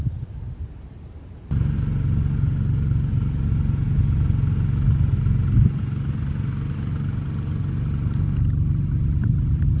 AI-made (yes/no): no